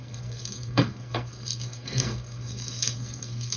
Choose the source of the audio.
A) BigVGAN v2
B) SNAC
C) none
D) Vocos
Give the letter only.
B